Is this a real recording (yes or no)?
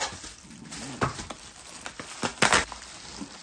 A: yes